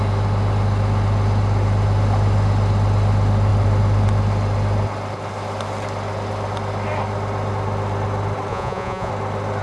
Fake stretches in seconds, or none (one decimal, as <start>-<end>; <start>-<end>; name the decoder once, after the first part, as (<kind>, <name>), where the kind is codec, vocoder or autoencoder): 8.5-9.1 (vocoder, Vocos)